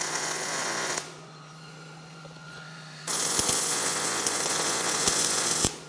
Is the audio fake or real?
fake